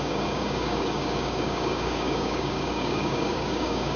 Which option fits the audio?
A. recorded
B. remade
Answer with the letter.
B